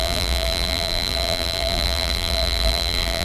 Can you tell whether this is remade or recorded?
remade